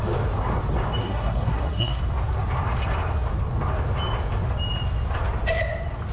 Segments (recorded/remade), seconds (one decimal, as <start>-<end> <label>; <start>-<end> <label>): 0.0-1.0 recorded; 1.0-2.0 remade; 2.0-6.1 recorded